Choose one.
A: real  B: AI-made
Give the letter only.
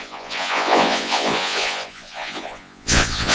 B